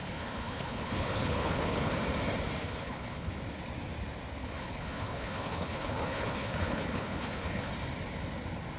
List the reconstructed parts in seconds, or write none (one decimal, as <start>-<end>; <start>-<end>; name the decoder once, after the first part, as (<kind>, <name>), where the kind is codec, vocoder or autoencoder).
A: 0.0-1.9 (codec, HILCodec); 2.6-3.3; 4.4-7.7